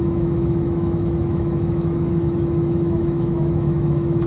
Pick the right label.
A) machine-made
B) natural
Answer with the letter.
A